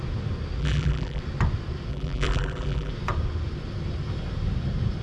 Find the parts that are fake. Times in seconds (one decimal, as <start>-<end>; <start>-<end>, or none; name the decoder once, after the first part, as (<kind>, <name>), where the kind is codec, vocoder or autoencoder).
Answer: 0.6-1.2 (vocoder, BigVGAN v2); 1.9-2.9